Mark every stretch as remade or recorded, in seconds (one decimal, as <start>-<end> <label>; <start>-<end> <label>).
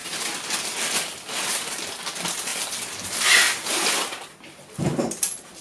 0.0-5.6 recorded